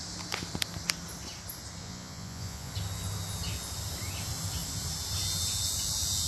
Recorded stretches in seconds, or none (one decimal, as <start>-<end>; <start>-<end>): 0.0-1.8; 2.7-6.3